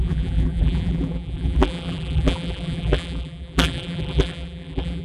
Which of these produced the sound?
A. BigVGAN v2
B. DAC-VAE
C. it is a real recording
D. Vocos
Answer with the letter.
A